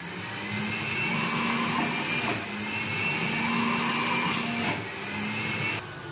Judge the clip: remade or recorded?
recorded